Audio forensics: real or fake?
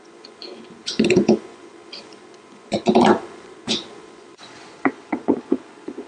fake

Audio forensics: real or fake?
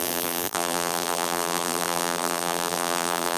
fake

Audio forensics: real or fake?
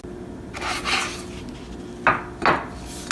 real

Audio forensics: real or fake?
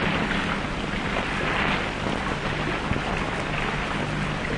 real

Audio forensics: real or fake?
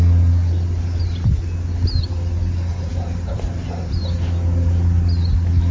real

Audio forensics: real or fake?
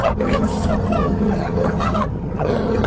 fake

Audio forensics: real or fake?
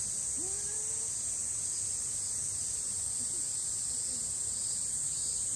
real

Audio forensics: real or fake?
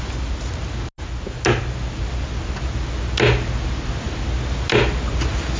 real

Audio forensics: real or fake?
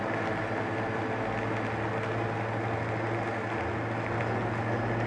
real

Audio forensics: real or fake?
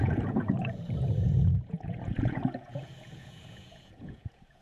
fake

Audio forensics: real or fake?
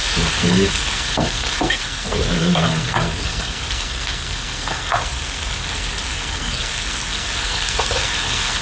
fake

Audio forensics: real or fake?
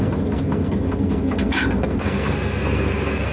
fake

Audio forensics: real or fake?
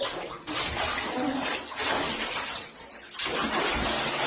real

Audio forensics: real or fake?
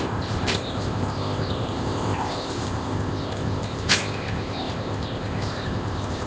fake